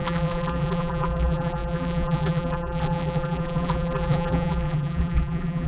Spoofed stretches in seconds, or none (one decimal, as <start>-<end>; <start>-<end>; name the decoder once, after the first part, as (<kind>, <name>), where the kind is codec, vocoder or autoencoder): 0.0-5.7 (vocoder, BigVGAN v2)